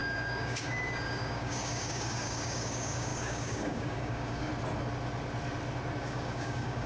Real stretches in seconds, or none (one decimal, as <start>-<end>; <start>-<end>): 4.5-6.0